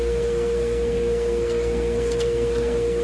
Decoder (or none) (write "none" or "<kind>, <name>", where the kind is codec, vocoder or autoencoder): codec, SNAC